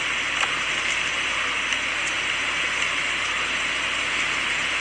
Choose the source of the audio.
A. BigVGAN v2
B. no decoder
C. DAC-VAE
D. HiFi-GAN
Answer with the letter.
B